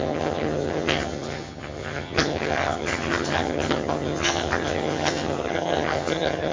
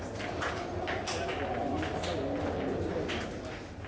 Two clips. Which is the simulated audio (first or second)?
first